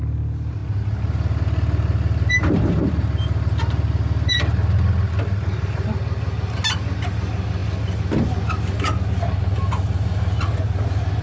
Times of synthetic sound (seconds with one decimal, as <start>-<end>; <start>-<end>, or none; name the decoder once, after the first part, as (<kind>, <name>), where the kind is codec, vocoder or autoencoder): none